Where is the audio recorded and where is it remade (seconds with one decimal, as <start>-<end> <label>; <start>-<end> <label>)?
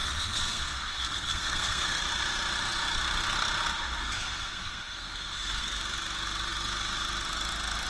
0.0-2.0 remade; 2.0-4.0 recorded; 4.0-5.8 remade; 5.8-7.9 recorded